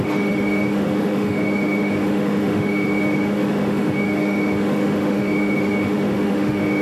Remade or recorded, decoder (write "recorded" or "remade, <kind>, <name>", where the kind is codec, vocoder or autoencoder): remade, autoencoder, DAC-VAE